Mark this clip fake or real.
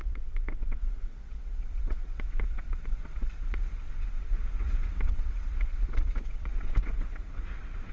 fake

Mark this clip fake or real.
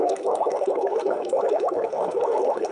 fake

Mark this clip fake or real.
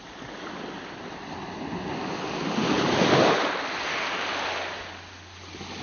real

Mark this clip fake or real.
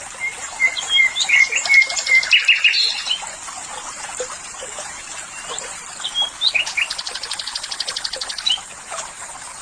real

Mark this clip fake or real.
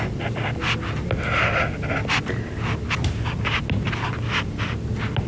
real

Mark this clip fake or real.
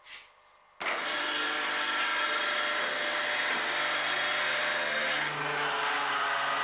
real